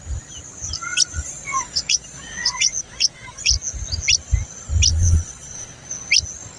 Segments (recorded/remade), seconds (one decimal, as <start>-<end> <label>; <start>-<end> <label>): 0.0-1.1 recorded; 1.1-3.5 remade; 3.5-4.9 recorded; 4.9-5.7 remade; 5.7-6.6 recorded